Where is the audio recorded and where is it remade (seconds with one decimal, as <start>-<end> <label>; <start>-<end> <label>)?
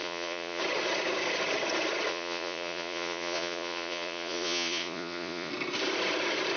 0.0-0.6 remade; 0.6-2.1 recorded; 2.1-5.5 remade; 5.5-6.6 recorded